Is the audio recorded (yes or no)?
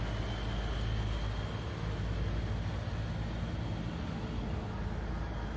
yes